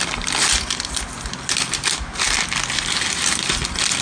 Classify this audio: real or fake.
real